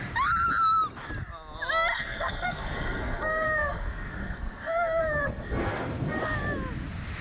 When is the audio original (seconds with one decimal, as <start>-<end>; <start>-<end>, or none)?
0.0-1.9; 6.2-7.2